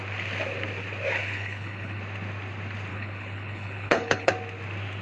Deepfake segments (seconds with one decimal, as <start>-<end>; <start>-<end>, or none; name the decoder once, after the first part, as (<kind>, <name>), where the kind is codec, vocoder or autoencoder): 1.2-2.0 (codec, HILCodec); 2.9-4.3